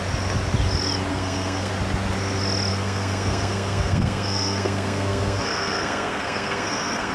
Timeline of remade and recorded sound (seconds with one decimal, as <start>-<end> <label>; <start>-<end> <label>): 0.0-1.1 recorded; 1.1-1.7 remade; 1.7-2.7 recorded; 2.7-7.1 remade